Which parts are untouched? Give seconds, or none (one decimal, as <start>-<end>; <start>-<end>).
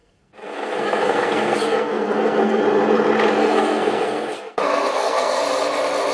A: 2.6-3.4; 5.4-6.1